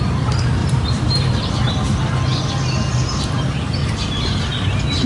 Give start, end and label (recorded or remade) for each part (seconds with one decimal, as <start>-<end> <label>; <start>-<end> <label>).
0.0-0.6 recorded; 0.6-1.5 remade; 1.5-3.8 recorded; 3.8-4.4 remade; 4.4-5.1 recorded

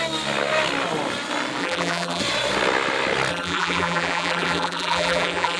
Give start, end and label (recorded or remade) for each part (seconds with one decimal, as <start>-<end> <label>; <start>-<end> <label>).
0.0-1.6 recorded; 1.6-2.2 remade; 2.2-3.3 recorded; 3.3-5.6 remade

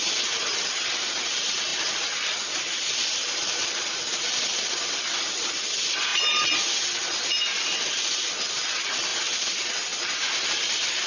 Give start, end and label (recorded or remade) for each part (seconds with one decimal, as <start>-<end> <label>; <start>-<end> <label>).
0.0-1.7 recorded; 1.7-5.6 remade; 5.6-9.1 recorded; 9.1-11.1 remade

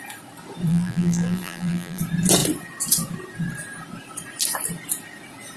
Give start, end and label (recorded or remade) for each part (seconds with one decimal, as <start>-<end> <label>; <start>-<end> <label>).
0.0-0.7 recorded; 0.7-2.0 remade; 2.0-5.6 recorded